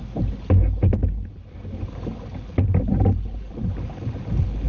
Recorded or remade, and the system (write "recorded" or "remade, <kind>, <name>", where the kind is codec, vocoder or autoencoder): recorded